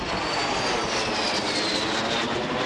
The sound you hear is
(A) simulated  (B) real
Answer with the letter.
B